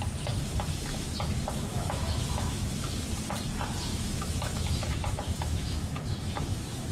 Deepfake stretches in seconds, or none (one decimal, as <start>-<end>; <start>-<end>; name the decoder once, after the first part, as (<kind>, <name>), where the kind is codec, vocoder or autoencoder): 1.7-2.7 (autoencoder, DAC-VAE); 3.9-6.9